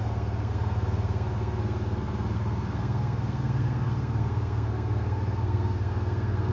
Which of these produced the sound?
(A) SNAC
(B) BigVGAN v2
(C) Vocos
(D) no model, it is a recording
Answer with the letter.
A